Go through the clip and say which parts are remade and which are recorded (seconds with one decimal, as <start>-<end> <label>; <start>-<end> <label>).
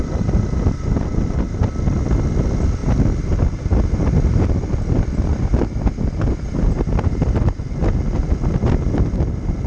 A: 0.0-1.6 remade; 1.6-5.3 recorded; 5.3-7.1 remade; 7.1-9.7 recorded